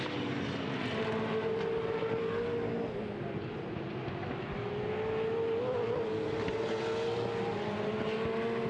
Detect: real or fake real